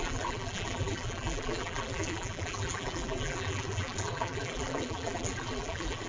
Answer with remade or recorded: remade